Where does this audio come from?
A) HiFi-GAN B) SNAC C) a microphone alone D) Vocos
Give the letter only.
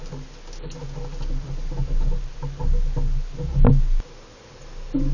C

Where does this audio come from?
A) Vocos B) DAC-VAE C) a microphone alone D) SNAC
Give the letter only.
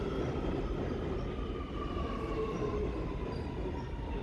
C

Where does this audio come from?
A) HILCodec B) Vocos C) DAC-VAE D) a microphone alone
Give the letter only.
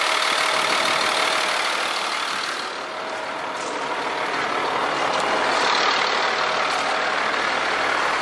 D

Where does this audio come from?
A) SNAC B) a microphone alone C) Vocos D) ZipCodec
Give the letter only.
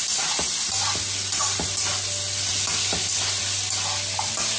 B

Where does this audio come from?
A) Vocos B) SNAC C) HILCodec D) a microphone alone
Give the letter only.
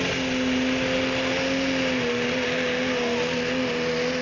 D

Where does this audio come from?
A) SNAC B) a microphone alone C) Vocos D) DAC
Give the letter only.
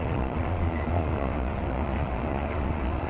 C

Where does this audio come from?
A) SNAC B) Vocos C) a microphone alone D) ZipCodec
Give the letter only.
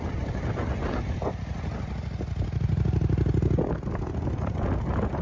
C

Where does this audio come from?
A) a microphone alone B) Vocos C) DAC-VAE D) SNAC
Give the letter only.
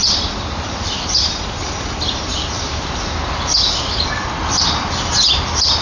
A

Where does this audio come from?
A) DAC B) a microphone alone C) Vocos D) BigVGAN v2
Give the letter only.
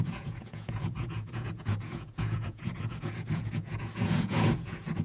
C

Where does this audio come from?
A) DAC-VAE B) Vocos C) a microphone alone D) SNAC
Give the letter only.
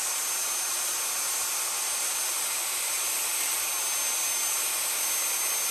C